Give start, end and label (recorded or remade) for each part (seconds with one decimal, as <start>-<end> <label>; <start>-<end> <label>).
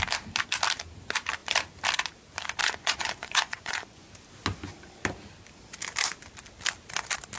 0.0-2.6 recorded; 2.6-4.1 remade; 4.1-7.4 recorded